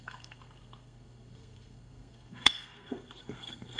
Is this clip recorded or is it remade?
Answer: remade